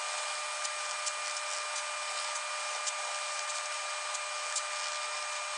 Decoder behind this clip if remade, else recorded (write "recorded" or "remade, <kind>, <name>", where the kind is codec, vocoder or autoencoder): recorded